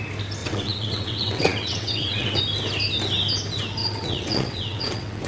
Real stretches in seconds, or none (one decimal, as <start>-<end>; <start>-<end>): 0.0-0.4; 2.4-3.8